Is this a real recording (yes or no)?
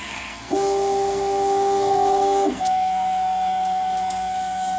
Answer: no